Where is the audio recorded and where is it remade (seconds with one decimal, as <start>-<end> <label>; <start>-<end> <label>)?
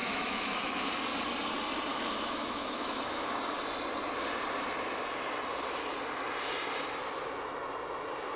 0.0-0.9 remade; 0.9-1.9 recorded; 1.9-3.3 remade; 3.3-8.4 recorded